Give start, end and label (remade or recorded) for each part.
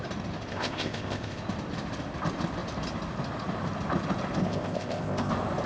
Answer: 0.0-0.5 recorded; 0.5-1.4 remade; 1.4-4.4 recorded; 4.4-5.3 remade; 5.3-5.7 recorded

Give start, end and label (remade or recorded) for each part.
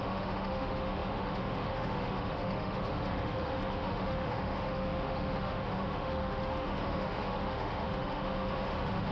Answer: 0.0-9.1 remade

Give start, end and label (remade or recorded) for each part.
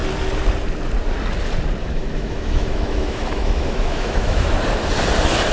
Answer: 0.0-1.8 recorded; 1.8-4.5 remade; 4.5-5.5 recorded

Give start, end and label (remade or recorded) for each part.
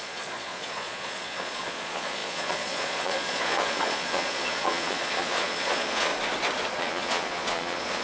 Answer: 0.0-6.1 remade; 6.1-6.8 recorded; 6.8-8.0 remade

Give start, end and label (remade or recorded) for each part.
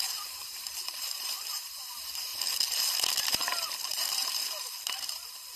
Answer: 0.0-2.3 remade; 2.3-3.2 recorded; 3.2-5.6 remade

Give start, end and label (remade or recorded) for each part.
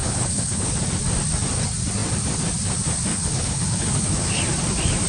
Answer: 0.0-0.7 remade; 0.7-3.1 recorded; 3.1-4.4 remade; 4.4-5.1 recorded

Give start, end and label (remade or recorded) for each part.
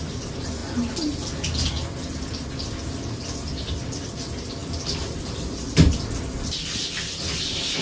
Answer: 0.0-7.8 recorded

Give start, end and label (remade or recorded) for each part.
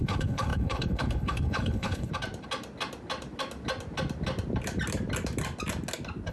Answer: 0.0-2.1 remade; 2.1-6.3 recorded